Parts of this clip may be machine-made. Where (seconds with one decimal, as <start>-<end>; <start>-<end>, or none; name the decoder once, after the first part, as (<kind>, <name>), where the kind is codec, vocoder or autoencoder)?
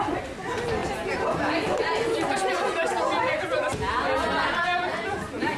none